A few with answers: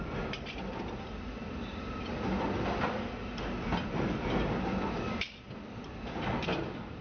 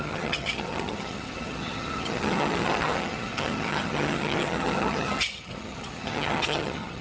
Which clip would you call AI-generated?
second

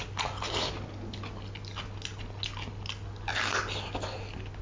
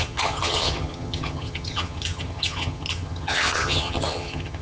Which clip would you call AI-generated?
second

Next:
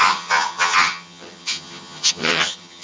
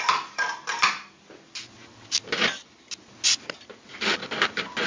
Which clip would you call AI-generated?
first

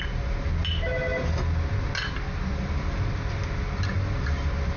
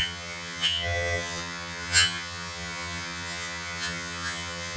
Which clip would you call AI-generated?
second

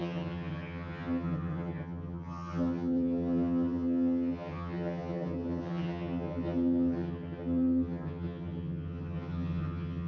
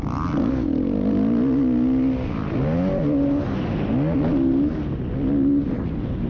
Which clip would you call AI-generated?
first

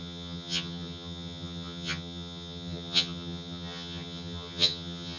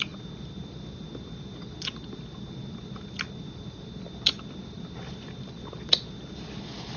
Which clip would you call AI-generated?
first